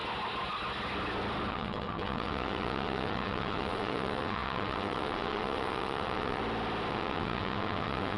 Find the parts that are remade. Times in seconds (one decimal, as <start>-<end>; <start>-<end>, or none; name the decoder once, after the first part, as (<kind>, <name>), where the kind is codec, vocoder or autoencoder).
1.5-6.4 (vocoder, WaveNeXt); 6.9-8.2